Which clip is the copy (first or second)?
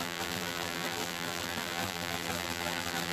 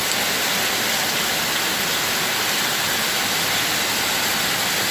first